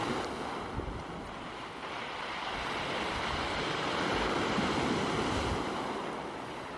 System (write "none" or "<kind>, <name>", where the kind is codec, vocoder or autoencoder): none